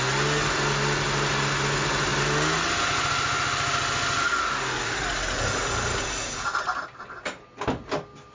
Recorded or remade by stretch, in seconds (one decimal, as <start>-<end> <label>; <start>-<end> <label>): 0.0-8.3 recorded

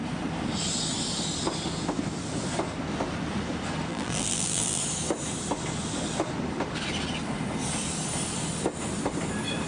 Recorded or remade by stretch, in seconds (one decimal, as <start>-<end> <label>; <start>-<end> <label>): 0.0-3.9 recorded; 3.9-4.8 remade; 4.8-9.7 recorded

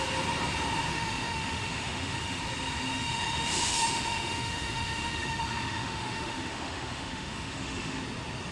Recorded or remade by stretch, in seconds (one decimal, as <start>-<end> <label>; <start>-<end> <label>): 0.0-0.9 recorded; 0.9-2.4 remade; 2.4-2.9 recorded; 2.9-8.0 remade; 8.0-8.5 recorded

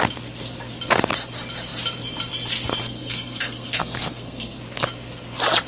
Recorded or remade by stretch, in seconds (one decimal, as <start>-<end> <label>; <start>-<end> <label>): 0.0-2.8 recorded; 2.8-4.6 remade; 4.6-5.7 recorded

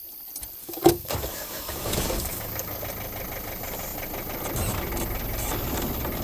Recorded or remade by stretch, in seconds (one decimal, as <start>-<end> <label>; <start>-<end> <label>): 0.0-0.6 recorded; 0.6-2.8 remade; 2.8-6.2 recorded